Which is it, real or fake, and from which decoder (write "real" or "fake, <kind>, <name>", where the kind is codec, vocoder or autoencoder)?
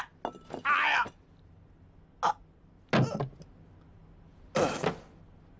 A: real